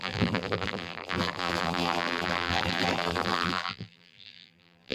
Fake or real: fake